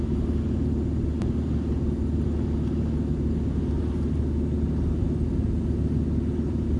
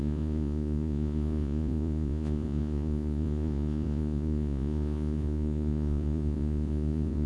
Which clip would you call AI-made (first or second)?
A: second